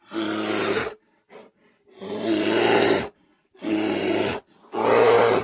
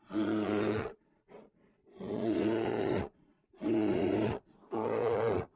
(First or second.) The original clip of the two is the first